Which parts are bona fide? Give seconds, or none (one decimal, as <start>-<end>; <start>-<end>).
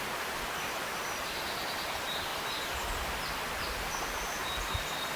2.3-3.6